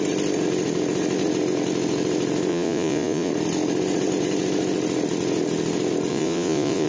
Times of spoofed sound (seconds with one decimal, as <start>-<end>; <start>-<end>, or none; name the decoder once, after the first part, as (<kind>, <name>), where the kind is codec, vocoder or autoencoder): 2.5-3.3 (vocoder, Vocos); 6.1-6.9